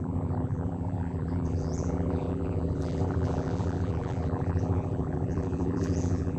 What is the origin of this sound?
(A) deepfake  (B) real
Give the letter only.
A